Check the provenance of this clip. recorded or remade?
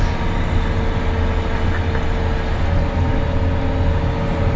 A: recorded